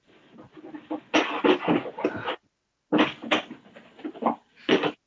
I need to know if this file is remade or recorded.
recorded